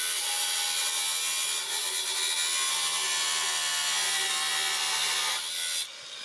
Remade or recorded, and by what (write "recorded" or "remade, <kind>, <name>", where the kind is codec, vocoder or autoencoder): recorded